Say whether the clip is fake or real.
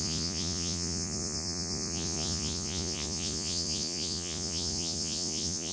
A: fake